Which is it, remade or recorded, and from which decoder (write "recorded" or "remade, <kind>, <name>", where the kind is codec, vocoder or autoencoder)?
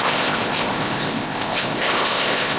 remade, codec, ZipCodec